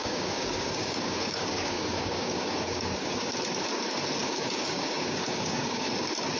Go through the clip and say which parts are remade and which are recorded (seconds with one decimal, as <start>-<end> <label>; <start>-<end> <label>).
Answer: 0.0-3.3 remade; 3.3-4.2 recorded; 4.2-5.9 remade; 5.9-6.4 recorded